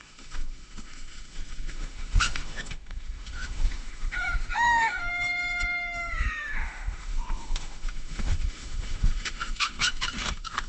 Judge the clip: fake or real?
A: fake